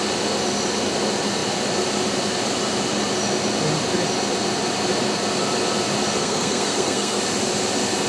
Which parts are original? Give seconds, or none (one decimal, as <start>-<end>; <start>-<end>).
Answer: 0.0-6.2; 7.2-8.1